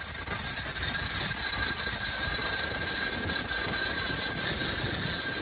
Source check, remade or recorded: recorded